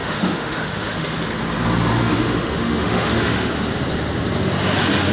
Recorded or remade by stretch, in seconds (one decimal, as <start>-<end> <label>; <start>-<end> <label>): 0.0-1.1 remade; 1.1-2.0 recorded; 2.0-3.5 remade; 3.5-5.1 recorded